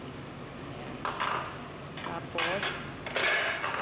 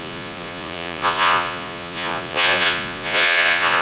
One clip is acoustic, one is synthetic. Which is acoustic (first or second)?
first